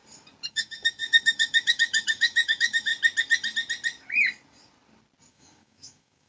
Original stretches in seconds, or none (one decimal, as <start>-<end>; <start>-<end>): 0.0-0.5; 2.9-5.3